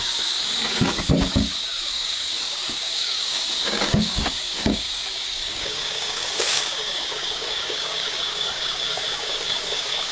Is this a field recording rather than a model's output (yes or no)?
no